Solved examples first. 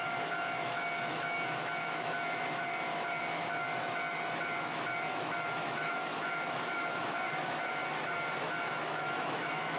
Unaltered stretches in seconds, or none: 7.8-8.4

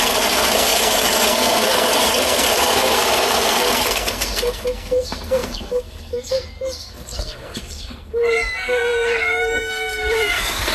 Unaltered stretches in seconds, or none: none

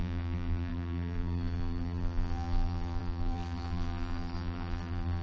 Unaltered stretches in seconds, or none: none

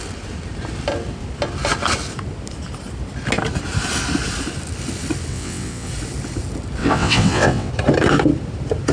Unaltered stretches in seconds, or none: 0.0-5.3; 5.9-6.8; 7.7-8.9